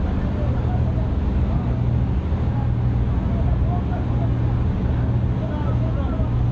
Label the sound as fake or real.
real